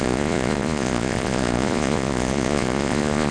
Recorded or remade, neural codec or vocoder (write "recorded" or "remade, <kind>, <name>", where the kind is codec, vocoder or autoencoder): remade, vocoder, Vocos